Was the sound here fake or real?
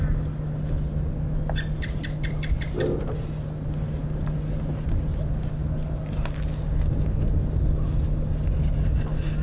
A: real